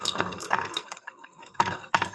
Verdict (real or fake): fake